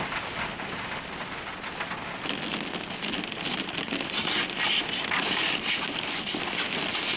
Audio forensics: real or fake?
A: real